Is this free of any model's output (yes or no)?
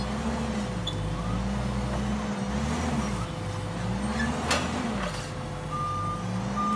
yes